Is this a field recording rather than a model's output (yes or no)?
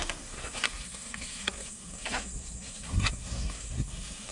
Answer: no